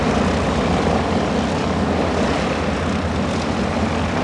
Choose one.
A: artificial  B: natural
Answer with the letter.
B